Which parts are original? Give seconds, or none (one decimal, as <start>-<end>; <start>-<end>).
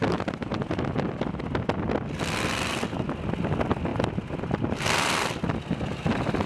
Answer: 0.0-6.5